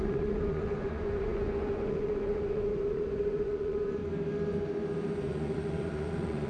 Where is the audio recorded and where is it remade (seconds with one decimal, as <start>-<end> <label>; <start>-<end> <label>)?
0.0-4.0 remade; 4.0-5.3 recorded; 5.3-6.5 remade